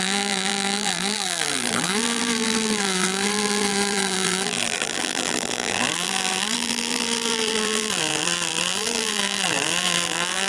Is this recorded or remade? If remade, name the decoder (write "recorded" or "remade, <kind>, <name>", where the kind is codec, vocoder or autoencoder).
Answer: remade, vocoder, BigVGAN v2